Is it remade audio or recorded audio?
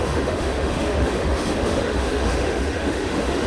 remade